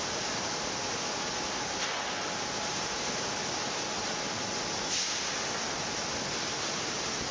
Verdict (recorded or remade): recorded